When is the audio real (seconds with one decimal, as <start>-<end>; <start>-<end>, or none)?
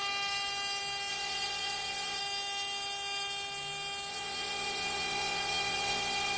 0.0-1.1; 2.2-4.1